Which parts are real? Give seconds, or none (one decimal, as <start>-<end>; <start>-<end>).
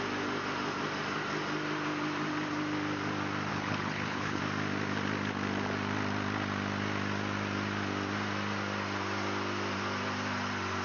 0.0-3.5; 4.4-10.8